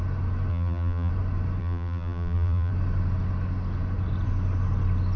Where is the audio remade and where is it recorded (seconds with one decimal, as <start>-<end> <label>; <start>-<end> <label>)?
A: 0.0-0.5 recorded; 0.5-1.1 remade; 1.1-1.6 recorded; 1.6-2.7 remade; 2.7-5.2 recorded